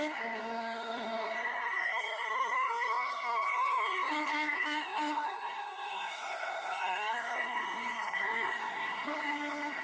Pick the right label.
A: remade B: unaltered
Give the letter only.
A